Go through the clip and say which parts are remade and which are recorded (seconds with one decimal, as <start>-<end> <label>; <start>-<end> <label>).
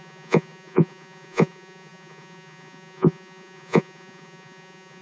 0.0-5.0 remade